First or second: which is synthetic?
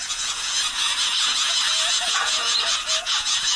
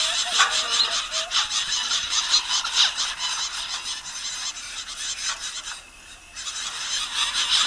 first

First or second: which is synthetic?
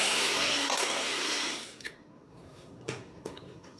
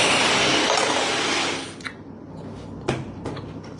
first